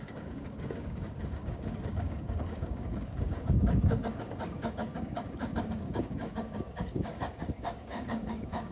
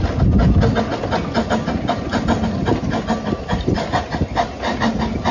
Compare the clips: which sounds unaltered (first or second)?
second